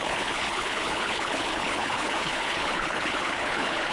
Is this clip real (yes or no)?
no